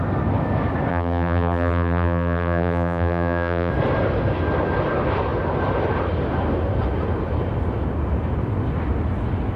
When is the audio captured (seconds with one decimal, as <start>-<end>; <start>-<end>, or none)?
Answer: 0.0-0.9; 3.7-9.6